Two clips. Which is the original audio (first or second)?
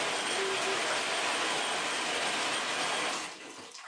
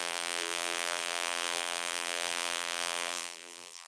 first